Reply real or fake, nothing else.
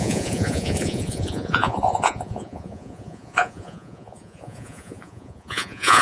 fake